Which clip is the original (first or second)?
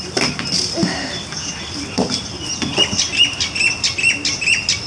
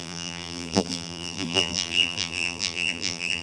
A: first